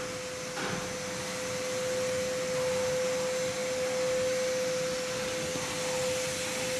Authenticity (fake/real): real